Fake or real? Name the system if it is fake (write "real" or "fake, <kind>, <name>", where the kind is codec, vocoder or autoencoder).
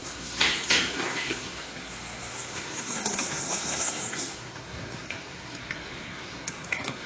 fake, codec, SNAC